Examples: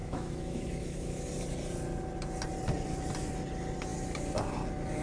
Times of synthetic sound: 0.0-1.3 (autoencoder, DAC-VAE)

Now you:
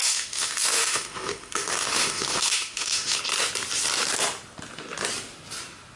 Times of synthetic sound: 0.0-3.2 (autoencoder, DAC-VAE)

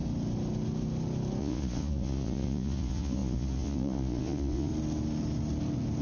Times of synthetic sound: 1.4-4.7 (vocoder, Vocos)